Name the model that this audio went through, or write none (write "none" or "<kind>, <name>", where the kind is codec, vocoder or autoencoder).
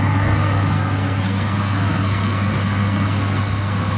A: codec, SNAC